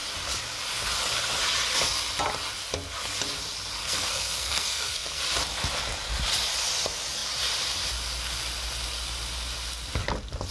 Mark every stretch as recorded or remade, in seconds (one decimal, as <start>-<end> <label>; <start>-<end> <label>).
0.0-3.8 recorded; 3.8-5.2 remade; 5.2-10.5 recorded